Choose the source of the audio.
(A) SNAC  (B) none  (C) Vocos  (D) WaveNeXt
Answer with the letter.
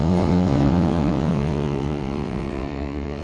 D